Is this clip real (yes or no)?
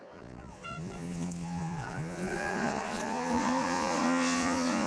no